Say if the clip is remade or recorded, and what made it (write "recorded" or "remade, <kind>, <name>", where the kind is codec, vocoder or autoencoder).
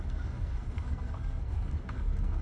remade, codec, SNAC